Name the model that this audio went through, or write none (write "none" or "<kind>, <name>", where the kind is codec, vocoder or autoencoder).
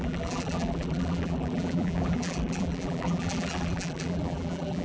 vocoder, BigVGAN v2